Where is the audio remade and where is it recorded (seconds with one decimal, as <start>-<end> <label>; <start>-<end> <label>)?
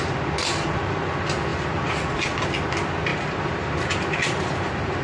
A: 0.0-3.1 recorded; 3.1-3.7 remade; 3.7-5.0 recorded